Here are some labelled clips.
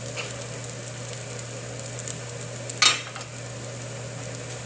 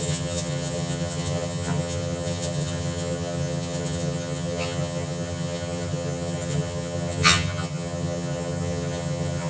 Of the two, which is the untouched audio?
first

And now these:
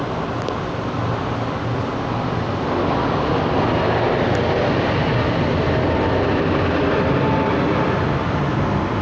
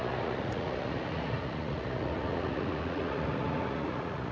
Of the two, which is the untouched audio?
first